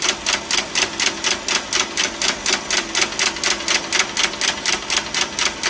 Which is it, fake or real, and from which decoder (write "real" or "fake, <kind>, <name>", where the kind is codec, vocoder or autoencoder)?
real